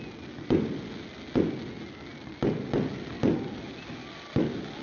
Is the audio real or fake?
real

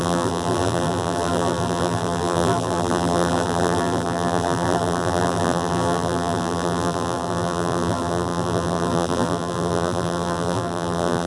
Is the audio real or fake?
fake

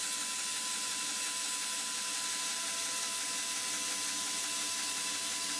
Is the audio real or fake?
real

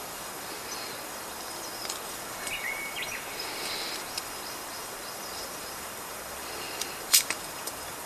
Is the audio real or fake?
fake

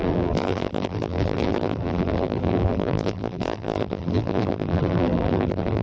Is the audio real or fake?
fake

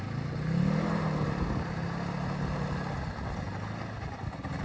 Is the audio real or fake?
real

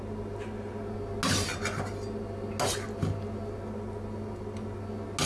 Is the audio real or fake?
real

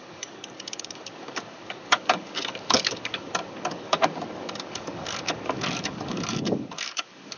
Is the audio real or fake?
fake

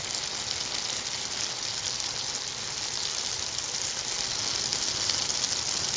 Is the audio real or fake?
real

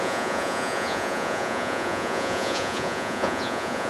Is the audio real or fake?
fake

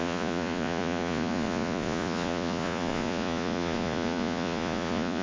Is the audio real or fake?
fake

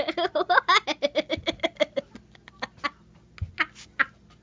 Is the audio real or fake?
real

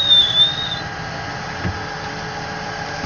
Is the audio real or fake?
real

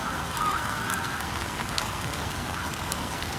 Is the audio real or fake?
fake